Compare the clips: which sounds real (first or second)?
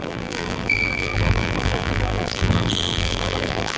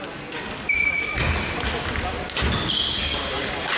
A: second